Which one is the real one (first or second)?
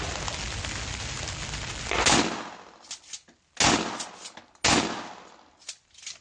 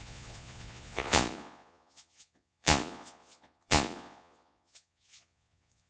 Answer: first